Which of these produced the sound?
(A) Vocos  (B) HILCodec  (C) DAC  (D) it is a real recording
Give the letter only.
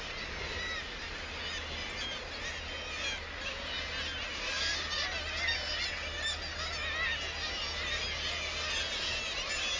D